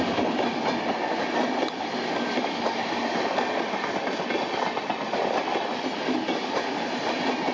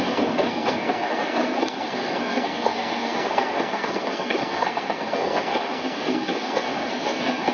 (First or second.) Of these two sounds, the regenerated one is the second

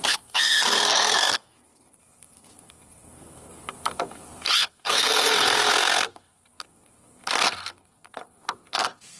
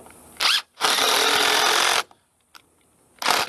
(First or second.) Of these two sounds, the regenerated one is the first